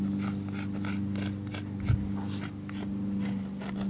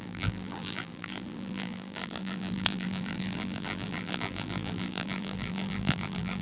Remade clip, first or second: second